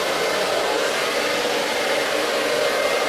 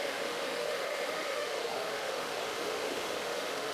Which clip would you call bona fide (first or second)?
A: first